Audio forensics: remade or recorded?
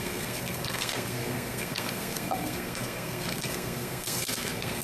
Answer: remade